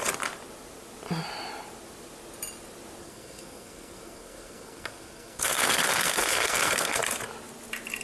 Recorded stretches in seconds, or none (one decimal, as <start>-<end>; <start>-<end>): 0.0-3.0; 7.0-8.0